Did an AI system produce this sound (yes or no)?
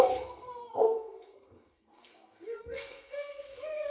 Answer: yes